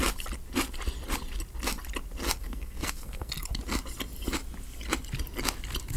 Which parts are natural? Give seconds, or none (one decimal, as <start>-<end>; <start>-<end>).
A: 0.0-2.4; 3.3-6.0

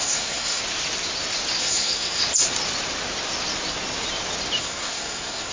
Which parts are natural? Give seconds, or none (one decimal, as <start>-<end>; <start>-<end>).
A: 0.6-1.6; 2.2-4.6